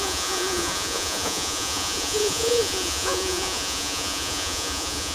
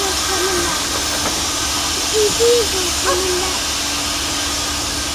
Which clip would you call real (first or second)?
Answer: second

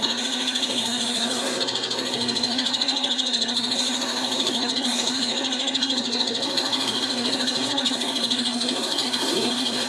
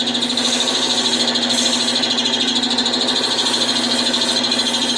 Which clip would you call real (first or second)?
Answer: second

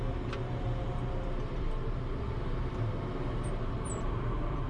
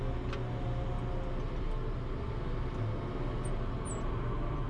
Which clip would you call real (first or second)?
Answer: second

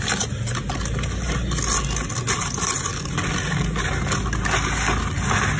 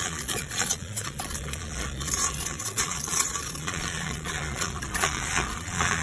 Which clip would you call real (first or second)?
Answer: first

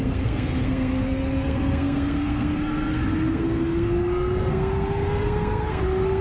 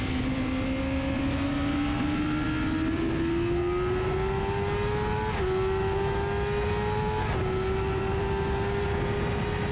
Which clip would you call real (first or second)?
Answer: second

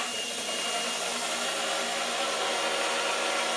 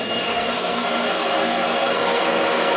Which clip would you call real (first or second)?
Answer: first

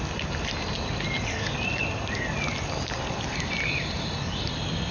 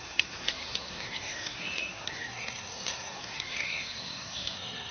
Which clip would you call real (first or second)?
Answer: first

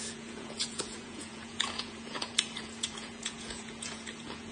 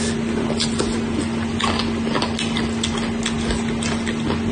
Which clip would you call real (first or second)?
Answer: second